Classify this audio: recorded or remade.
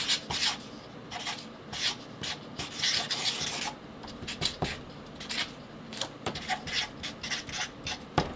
recorded